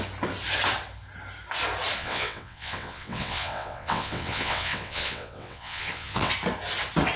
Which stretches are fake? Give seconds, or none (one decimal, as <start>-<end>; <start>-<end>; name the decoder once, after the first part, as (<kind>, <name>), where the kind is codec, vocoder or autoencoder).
2.0-6.3 (vocoder, WaveNeXt)